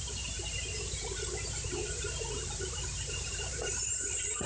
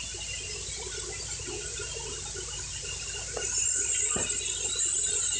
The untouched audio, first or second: second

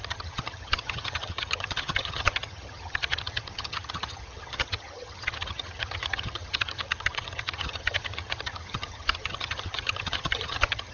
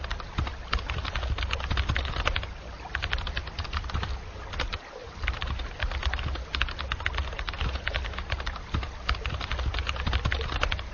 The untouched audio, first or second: second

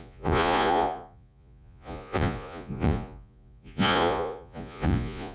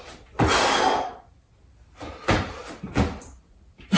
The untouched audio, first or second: second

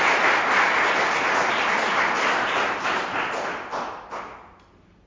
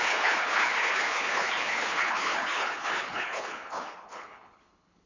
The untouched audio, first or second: first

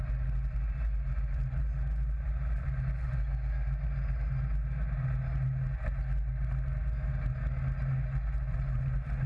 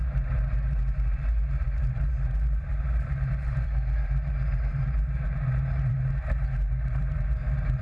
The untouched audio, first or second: first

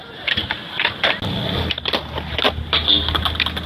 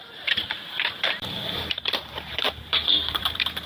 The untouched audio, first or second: first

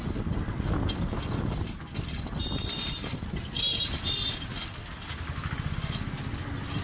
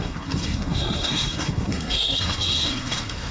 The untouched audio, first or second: first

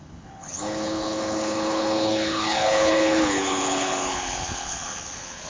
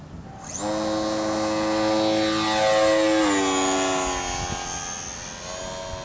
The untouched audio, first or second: second